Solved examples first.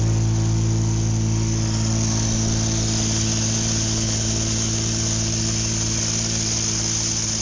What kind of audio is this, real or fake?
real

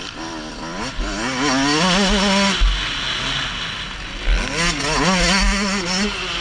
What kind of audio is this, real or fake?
real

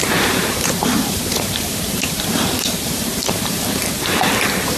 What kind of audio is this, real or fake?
fake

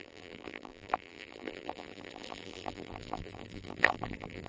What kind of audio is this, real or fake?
fake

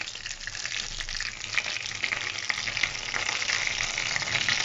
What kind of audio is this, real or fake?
real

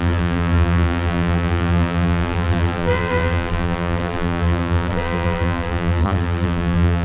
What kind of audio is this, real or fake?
fake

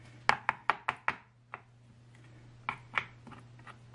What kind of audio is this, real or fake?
real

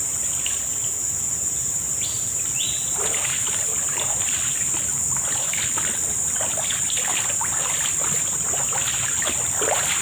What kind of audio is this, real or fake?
real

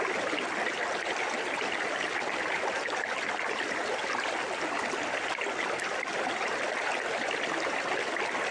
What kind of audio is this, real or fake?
real